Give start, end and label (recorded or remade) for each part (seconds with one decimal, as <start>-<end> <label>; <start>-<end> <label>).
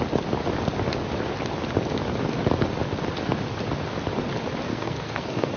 0.0-4.7 recorded; 4.7-5.6 remade